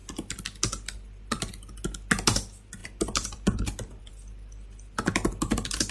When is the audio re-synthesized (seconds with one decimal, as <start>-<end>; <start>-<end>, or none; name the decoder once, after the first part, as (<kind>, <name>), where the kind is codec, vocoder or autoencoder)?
2.8-4.1 (vocoder, BigVGAN v2)